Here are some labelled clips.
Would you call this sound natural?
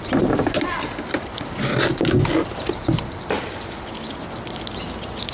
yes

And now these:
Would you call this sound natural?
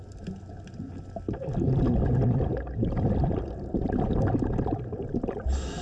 yes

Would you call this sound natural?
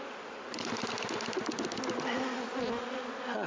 yes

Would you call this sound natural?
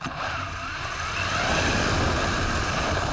yes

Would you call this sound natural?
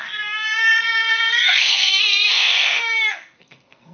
no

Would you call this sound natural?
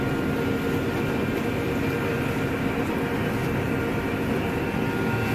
yes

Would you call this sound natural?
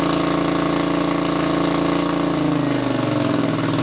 yes